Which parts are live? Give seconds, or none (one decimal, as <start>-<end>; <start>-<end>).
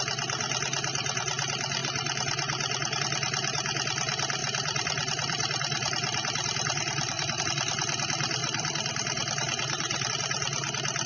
0.0-4.4; 7.4-8.4; 10.1-11.1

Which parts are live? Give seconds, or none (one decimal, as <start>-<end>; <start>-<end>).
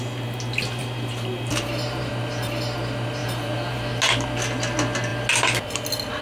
0.0-0.8; 2.1-3.2; 3.9-6.2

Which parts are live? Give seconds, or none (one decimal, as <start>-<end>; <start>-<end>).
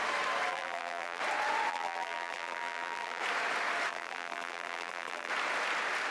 0.0-0.5; 1.2-1.7; 3.2-3.9; 5.3-6.1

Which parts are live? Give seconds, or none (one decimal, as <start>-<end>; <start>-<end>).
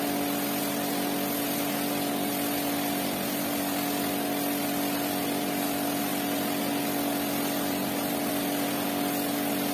0.0-9.7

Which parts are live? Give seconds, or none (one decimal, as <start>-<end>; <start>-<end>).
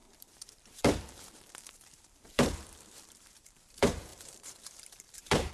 none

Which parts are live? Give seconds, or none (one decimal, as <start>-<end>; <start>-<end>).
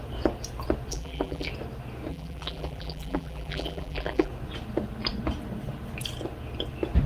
0.0-0.9; 1.5-2.1; 4.3-7.1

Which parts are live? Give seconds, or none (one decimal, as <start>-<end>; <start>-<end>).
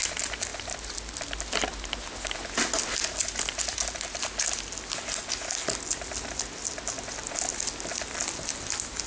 0.0-9.1